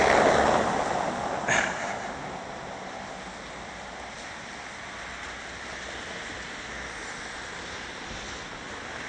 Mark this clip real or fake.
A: real